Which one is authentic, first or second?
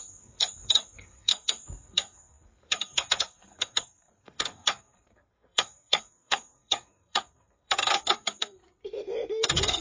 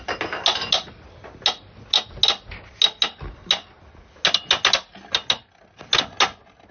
second